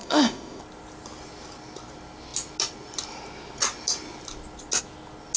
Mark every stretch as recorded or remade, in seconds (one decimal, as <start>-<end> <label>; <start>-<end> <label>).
0.0-0.6 remade; 0.6-5.4 recorded